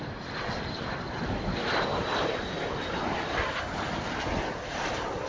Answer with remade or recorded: recorded